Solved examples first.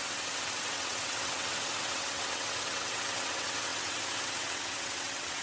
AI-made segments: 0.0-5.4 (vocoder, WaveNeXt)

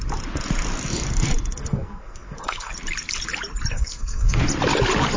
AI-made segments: 1.6-2.7 (codec, SNAC); 3.7-4.4

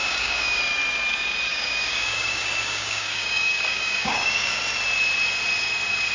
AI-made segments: 0.0-0.6 (codec, DAC); 1.5-4.6

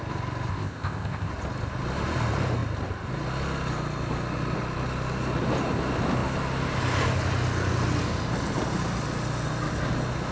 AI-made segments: 0.5-1.3 (codec, ZipCodec)